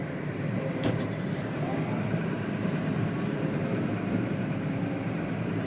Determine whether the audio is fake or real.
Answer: fake